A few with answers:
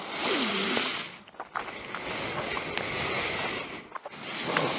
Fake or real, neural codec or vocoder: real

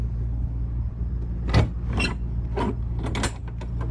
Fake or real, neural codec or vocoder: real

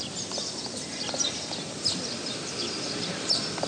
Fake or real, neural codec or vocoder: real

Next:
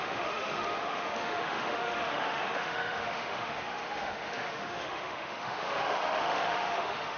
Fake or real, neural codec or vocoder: fake, autoencoder, DAC-VAE